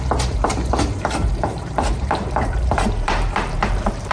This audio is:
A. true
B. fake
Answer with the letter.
B